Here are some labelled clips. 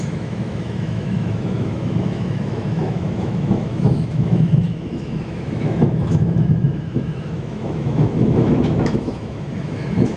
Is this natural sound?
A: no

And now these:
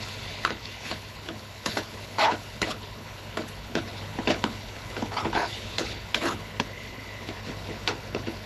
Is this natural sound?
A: no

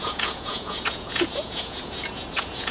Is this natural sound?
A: no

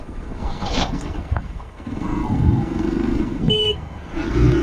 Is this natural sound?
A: no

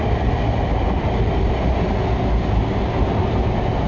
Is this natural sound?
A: yes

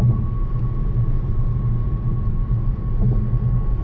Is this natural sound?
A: yes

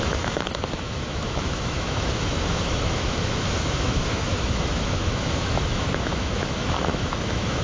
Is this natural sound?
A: no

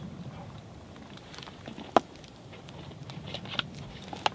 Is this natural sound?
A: yes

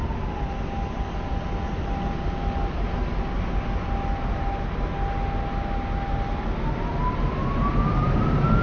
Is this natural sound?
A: yes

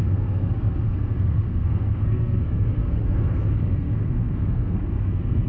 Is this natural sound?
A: no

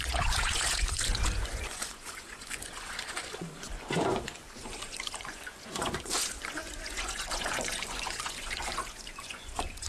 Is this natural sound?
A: no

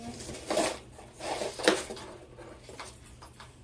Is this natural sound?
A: yes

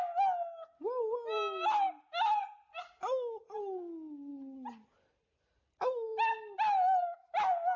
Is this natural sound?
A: yes